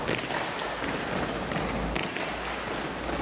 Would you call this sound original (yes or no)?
yes